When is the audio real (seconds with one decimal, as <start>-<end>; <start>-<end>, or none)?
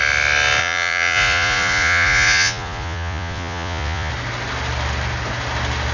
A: 0.0-0.6; 4.1-5.9